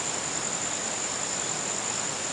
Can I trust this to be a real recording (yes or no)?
yes